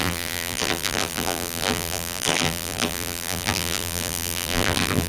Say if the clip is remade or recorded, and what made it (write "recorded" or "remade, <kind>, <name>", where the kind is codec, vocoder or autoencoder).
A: remade, vocoder, BigVGAN v2